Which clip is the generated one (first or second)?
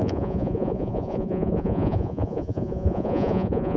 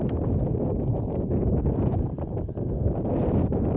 first